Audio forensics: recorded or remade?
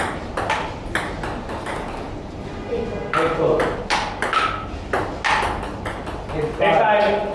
recorded